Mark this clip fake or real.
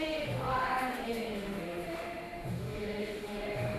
fake